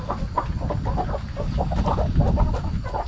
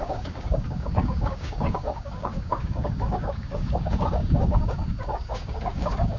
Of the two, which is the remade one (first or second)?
second